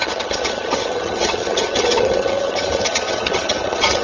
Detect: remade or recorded remade